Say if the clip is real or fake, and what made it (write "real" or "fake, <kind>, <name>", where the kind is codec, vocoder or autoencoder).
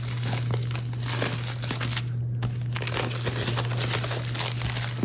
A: real